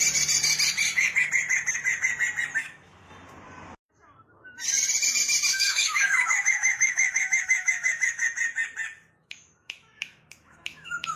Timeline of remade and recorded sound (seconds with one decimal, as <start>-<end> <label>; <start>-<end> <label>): 0.0-2.6 recorded; 2.6-3.1 remade; 3.1-5.5 recorded; 5.5-8.2 remade; 8.2-9.2 recorded; 9.2-11.2 remade